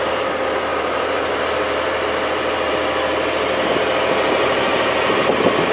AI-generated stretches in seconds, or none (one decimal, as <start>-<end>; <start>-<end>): 0.7-2.7